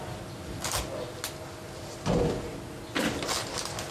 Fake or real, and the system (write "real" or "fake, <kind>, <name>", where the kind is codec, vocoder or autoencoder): real